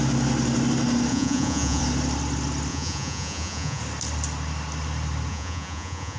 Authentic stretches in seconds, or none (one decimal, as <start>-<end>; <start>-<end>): 0.0-1.1; 1.8-2.7; 3.8-5.3